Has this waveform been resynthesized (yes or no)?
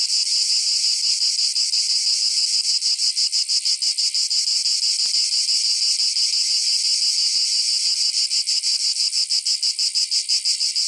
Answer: no